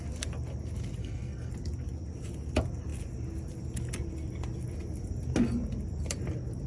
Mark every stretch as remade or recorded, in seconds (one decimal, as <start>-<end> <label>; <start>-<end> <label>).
0.0-1.0 recorded; 1.0-1.5 remade; 1.5-6.7 recorded

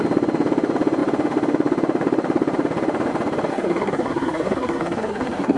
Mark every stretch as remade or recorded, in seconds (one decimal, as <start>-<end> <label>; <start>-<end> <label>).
0.0-3.5 recorded; 3.5-5.6 remade

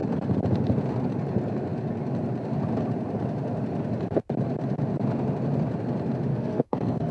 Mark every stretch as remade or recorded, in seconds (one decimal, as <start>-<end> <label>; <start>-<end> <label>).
0.0-6.3 recorded; 6.3-7.1 remade

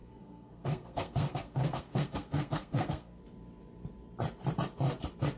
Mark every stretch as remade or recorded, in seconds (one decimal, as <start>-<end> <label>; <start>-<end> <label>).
0.0-3.2 remade; 3.2-5.4 recorded

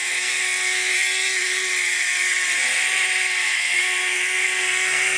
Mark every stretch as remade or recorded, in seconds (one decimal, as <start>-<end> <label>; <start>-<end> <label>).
0.0-0.9 remade; 0.9-3.4 recorded; 3.4-5.2 remade

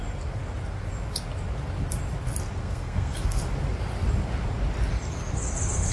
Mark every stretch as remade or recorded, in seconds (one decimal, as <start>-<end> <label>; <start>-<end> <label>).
0.0-2.6 recorded; 2.6-3.4 remade; 3.4-5.9 recorded